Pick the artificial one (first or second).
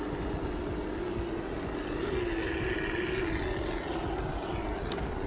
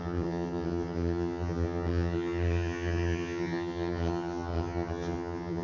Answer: second